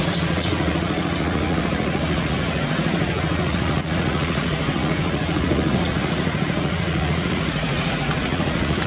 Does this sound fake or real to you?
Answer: fake